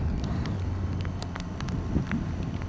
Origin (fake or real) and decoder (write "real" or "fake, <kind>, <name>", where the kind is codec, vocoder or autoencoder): real